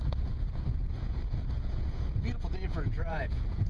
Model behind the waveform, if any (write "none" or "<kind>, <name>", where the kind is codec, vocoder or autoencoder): vocoder, Vocos